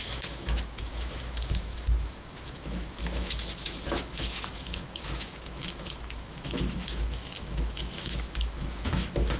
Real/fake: fake